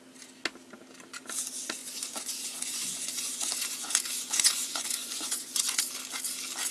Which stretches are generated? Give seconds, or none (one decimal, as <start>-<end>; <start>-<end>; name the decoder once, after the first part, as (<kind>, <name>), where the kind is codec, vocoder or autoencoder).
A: 1.8-5.8 (vocoder, Vocos)